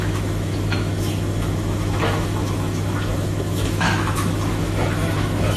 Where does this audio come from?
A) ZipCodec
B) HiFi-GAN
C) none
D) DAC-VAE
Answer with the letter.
D